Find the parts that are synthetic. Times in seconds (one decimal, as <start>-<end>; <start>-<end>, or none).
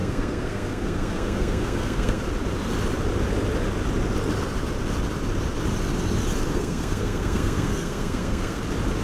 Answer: 0.0-2.2; 6.5-8.6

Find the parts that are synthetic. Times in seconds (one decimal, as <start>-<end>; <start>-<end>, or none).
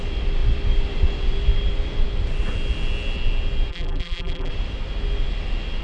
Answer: 3.7-4.5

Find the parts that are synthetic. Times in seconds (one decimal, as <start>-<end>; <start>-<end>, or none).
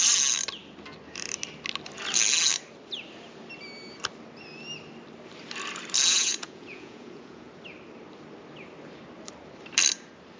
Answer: 6.1-7.5